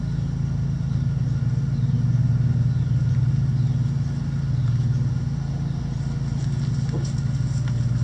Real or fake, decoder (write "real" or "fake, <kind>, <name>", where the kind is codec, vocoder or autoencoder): real